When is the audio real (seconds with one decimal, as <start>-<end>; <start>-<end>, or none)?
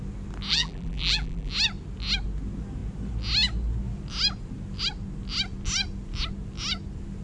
0.0-0.5; 1.5-7.2